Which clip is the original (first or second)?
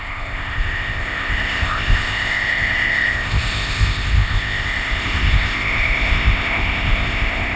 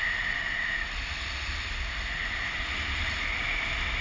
second